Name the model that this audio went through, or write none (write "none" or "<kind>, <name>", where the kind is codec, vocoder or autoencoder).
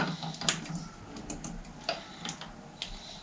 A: none